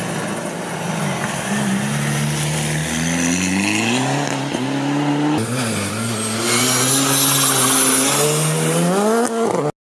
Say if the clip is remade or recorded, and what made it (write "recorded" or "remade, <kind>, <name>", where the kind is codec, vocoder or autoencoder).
recorded